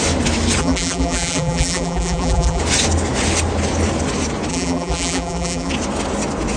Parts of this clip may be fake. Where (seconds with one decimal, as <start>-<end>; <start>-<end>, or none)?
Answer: 0.6-2.6; 4.5-5.7